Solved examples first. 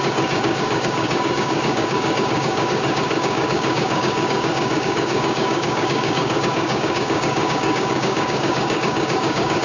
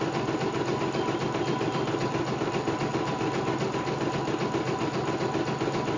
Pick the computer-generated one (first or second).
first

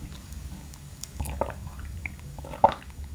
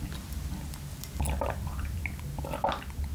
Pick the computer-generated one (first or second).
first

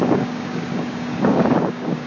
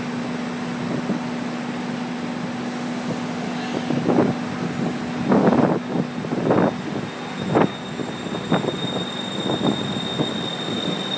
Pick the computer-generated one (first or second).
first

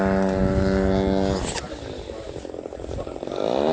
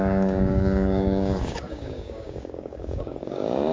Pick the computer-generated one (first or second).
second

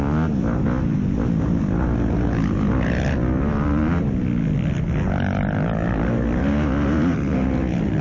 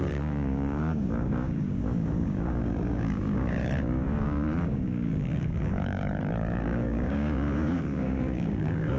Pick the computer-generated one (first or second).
second